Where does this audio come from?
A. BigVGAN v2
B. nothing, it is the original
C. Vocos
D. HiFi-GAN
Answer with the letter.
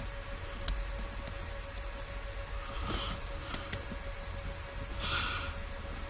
B